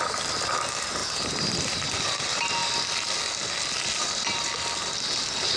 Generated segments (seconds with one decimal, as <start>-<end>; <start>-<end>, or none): 1.0-1.8